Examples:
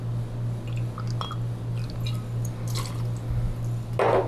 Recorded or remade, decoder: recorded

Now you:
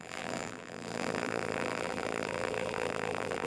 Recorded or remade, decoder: remade, vocoder, BigVGAN v2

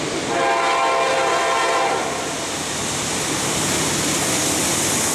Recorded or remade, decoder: recorded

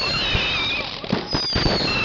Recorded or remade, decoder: recorded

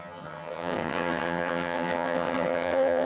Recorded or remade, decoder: remade, vocoder, HiFi-GAN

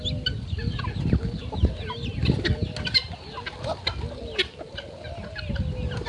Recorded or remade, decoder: recorded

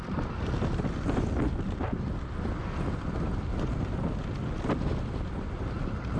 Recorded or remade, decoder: recorded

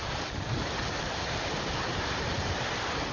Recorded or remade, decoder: recorded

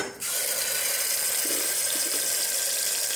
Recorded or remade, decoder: recorded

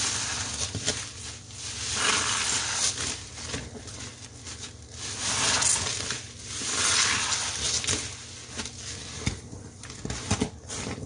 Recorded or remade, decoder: recorded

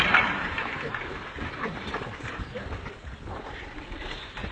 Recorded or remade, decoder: remade, vocoder, BigVGAN v2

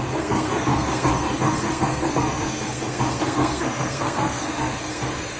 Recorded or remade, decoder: remade, codec, SNAC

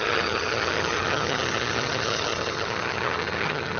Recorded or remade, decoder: remade, vocoder, HiFi-GAN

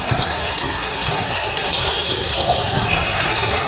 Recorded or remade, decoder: remade, codec, SNAC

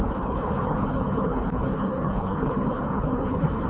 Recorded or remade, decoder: remade, codec, HILCodec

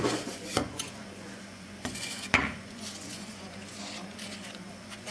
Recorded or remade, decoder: remade, vocoder, Vocos